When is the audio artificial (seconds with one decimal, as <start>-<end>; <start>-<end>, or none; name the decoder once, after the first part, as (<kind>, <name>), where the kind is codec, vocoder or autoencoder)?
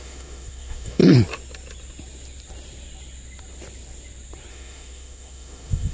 0.0-1.0 (autoencoder, DAC-VAE); 4.5-5.9